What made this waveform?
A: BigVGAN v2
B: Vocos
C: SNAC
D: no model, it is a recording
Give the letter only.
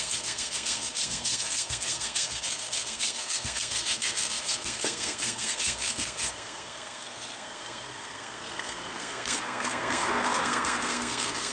C